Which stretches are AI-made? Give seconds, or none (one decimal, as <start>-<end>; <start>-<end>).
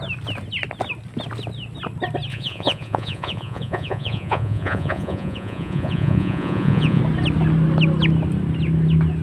2.3-7.0